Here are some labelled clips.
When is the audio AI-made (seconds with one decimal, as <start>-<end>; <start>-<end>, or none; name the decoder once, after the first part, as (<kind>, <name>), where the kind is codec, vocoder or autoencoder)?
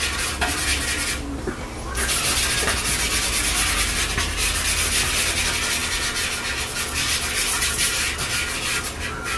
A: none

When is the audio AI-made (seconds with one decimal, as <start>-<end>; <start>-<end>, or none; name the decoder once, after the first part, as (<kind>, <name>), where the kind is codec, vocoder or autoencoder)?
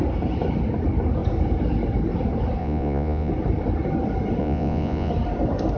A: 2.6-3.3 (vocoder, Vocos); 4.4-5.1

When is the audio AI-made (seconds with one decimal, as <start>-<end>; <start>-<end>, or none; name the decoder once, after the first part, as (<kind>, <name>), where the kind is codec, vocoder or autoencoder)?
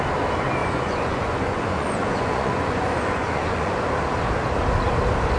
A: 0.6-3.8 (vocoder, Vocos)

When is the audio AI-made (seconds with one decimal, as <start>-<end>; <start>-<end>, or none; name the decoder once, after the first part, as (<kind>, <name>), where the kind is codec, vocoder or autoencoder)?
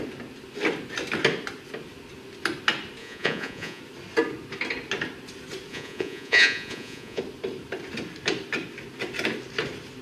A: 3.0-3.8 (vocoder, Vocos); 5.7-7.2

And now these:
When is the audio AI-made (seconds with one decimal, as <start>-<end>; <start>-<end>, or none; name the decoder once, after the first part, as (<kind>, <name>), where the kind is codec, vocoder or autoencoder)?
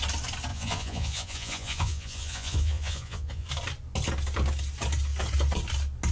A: 0.5-3.5 (vocoder, Vocos)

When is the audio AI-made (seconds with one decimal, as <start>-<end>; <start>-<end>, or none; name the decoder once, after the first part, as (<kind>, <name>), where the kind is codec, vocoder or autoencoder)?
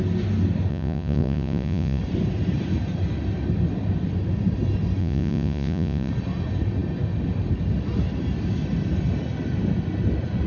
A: 0.7-2.0 (vocoder, Vocos); 5.0-6.1